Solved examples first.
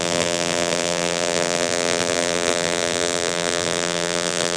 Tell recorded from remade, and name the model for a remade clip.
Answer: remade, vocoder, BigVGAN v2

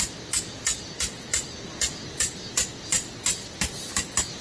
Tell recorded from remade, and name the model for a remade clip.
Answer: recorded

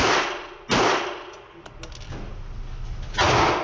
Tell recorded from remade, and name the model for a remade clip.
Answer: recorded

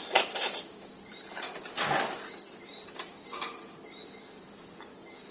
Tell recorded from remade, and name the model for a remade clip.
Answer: recorded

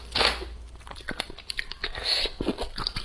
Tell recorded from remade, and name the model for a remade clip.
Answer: recorded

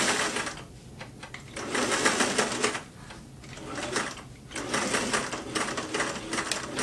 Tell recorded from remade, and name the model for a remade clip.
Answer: recorded